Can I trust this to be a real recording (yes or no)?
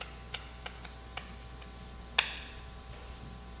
yes